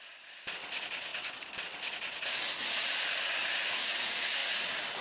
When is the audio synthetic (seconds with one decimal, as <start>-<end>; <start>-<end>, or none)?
none